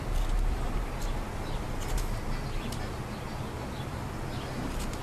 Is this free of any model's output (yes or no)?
yes